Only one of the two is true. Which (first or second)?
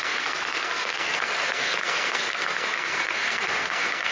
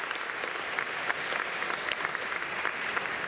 second